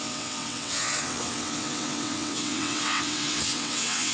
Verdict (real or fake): fake